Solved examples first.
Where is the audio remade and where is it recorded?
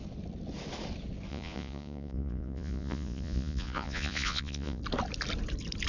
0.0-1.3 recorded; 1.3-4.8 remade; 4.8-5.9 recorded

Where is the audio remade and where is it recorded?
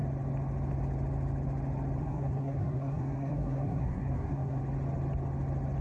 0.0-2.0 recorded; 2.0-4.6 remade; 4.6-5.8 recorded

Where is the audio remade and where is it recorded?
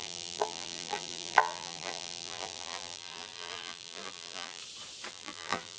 0.0-4.6 remade; 4.6-5.1 recorded; 5.1-5.8 remade